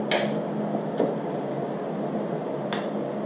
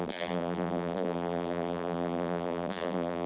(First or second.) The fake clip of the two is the second